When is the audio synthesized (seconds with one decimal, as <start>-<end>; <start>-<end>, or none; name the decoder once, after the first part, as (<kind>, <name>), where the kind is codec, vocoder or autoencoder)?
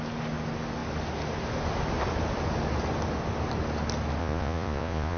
4.2-5.2 (vocoder, Vocos)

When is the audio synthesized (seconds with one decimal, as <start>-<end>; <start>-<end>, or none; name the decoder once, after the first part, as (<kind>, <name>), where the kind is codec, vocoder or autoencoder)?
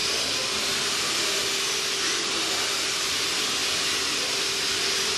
none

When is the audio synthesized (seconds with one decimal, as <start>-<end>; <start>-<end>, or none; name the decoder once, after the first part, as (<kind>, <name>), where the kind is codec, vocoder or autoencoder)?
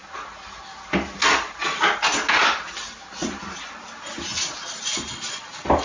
none